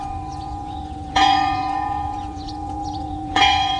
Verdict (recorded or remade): remade